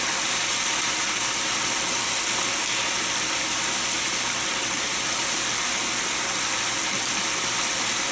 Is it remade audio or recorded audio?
recorded